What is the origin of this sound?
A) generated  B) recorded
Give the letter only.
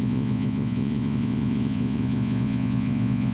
A